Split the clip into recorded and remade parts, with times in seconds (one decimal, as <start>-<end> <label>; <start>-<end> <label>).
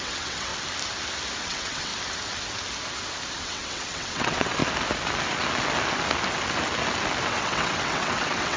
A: 0.0-0.5 remade; 0.5-1.4 recorded; 1.4-1.9 remade; 1.9-3.3 recorded; 3.3-4.6 remade; 4.6-7.3 recorded; 7.3-8.6 remade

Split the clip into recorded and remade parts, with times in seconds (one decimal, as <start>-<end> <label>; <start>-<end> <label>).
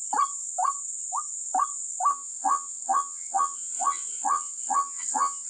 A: 0.0-2.1 recorded; 2.1-5.5 remade